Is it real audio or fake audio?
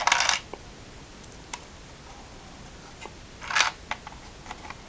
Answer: real